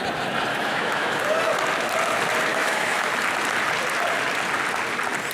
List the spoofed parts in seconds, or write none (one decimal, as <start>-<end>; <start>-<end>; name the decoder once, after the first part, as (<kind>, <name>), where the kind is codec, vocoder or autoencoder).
0.5-1.2 (autoencoder, DAC-VAE); 2.5-3.1